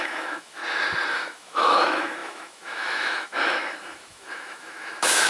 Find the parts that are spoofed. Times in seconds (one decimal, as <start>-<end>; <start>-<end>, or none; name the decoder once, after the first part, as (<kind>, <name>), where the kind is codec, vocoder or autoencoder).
0.0-0.6 (autoencoder, DAC-VAE); 1.1-5.3